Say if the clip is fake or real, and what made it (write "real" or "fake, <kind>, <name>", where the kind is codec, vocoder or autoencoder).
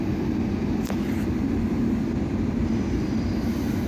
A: real